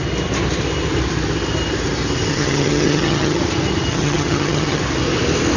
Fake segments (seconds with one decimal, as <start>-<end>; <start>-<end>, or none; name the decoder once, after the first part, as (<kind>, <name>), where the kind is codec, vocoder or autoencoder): 2.3-3.4 (vocoder, HiFi-GAN); 3.9-4.8

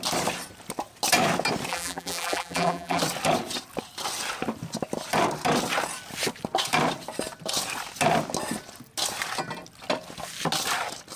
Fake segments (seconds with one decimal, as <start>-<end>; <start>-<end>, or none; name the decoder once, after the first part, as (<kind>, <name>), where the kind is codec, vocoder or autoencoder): 1.7-3.0 (vocoder, BigVGAN v2)

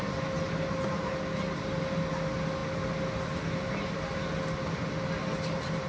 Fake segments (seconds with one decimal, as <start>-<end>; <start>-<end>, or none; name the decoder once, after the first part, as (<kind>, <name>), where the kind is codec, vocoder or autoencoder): none

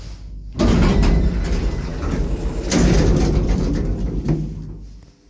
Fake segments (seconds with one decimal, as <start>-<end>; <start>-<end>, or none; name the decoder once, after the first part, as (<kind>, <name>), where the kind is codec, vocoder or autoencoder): none

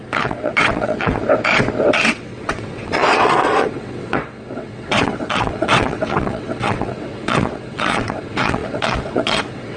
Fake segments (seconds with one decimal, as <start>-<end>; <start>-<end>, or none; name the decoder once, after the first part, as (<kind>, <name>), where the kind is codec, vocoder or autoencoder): 0.0-1.2 (vocoder, WaveNeXt); 2.0-9.8

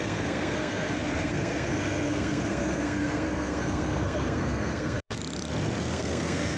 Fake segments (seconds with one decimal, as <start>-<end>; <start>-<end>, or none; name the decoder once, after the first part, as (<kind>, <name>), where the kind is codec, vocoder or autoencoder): 0.0-5.2 (codec, SNAC); 5.8-6.6

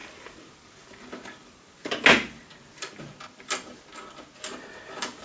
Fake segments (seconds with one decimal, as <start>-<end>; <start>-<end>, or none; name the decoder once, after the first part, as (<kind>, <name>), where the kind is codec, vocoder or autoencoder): none